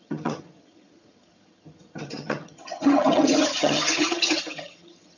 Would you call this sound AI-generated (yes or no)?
yes